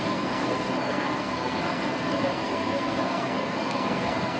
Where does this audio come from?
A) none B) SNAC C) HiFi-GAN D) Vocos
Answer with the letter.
B